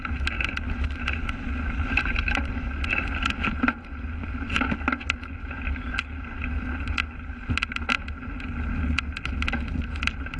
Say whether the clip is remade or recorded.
recorded